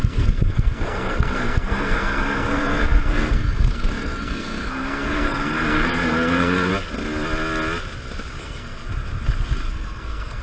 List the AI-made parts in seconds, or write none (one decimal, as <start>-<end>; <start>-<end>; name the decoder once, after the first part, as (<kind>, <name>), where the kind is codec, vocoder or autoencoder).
0.0-6.7 (codec, SNAC); 8.4-8.8; 9.7-10.4